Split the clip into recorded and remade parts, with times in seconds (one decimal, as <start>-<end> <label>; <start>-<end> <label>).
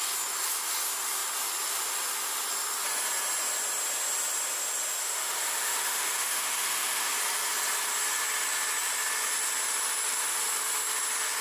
0.0-5.0 recorded; 5.0-7.1 remade; 7.1-11.4 recorded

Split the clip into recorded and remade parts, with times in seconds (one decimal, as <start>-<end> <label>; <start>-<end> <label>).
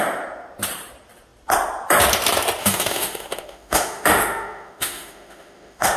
0.0-2.6 recorded; 2.6-6.0 remade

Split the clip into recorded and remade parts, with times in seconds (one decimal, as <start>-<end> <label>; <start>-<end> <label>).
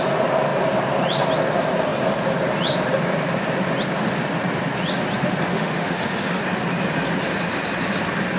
0.0-5.5 recorded; 5.5-6.4 remade; 6.4-8.4 recorded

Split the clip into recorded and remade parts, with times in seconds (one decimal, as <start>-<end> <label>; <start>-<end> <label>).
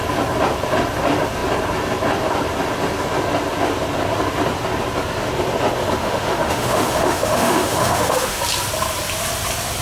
0.0-6.0 recorded; 6.0-8.4 remade; 8.4-9.8 recorded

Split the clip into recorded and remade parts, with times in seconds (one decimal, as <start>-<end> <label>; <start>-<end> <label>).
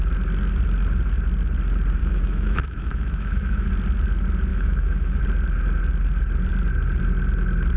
0.0-2.0 recorded; 2.0-3.7 remade; 3.7-4.5 recorded; 4.5-5.2 remade; 5.2-7.8 recorded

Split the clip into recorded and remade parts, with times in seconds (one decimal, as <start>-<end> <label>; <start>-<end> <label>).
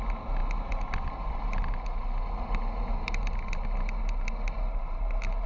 0.0-5.5 recorded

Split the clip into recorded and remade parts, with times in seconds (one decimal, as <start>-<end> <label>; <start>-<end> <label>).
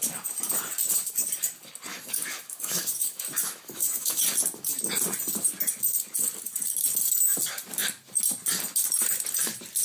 0.0-1.9 recorded; 1.9-4.2 remade; 4.2-9.8 recorded